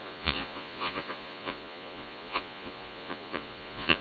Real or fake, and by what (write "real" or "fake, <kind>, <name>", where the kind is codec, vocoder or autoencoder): fake, vocoder, Vocos